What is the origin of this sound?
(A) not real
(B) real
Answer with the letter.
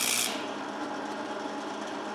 B